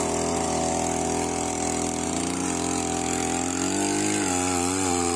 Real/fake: real